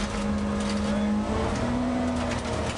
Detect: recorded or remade recorded